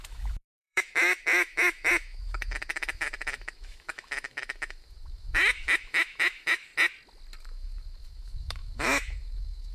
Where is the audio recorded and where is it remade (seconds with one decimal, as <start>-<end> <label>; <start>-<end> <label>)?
0.0-6.7 remade; 6.7-7.4 recorded; 7.4-9.7 remade

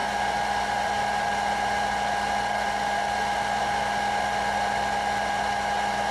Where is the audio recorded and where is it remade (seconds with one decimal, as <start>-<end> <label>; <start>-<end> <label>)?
0.0-6.1 recorded

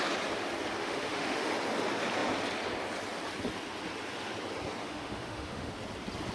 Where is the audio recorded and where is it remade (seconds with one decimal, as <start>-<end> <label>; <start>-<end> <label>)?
0.0-0.8 recorded; 0.8-1.5 remade; 1.5-4.8 recorded; 4.8-5.7 remade; 5.7-6.3 recorded

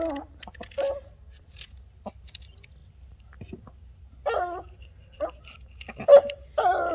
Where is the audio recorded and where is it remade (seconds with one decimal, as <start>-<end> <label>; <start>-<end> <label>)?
0.0-6.9 recorded